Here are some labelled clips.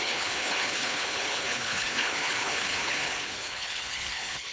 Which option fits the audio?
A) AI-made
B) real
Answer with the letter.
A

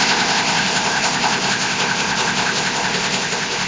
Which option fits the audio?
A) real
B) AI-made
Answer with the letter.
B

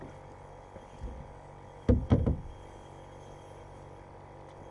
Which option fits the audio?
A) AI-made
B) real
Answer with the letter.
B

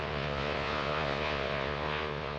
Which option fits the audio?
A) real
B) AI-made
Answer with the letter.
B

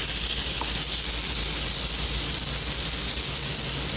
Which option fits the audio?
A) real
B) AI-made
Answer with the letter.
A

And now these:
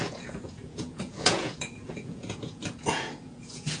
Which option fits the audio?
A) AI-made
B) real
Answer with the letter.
A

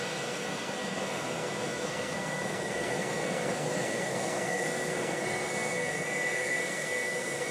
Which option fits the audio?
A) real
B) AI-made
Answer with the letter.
B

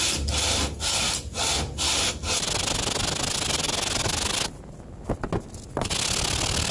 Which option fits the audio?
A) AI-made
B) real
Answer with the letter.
B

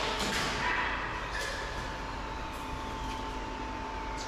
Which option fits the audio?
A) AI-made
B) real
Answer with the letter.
B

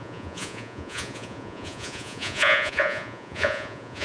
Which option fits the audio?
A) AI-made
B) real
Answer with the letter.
A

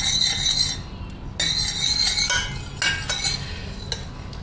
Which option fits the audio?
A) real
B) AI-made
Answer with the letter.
A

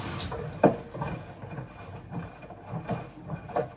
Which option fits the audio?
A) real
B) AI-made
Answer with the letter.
A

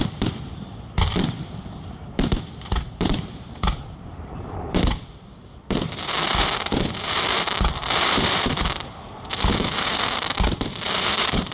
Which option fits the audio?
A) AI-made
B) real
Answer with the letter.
A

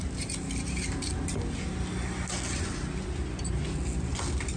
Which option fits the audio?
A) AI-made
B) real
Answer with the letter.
B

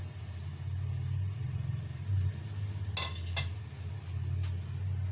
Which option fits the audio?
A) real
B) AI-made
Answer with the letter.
A